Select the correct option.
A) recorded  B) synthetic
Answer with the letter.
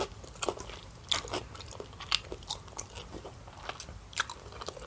A